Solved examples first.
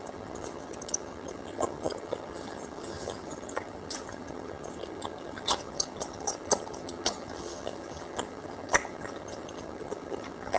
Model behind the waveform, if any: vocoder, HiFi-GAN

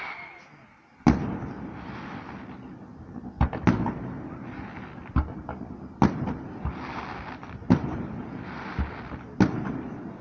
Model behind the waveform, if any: none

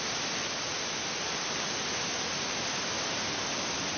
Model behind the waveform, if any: none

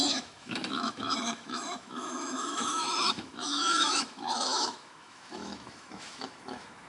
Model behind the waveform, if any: autoencoder, DAC-VAE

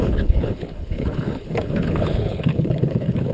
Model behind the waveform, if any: codec, HILCodec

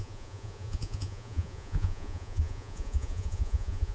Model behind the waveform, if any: vocoder, Vocos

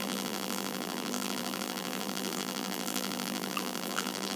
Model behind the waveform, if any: vocoder, BigVGAN v2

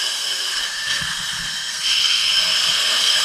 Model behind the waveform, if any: codec, SNAC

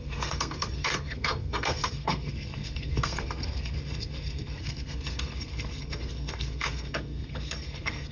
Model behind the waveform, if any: codec, SNAC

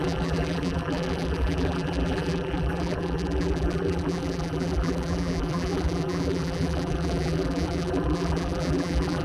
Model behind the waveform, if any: vocoder, BigVGAN v2